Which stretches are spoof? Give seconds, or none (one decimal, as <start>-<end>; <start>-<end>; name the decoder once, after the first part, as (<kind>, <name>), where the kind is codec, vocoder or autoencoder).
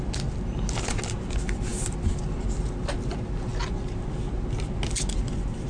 none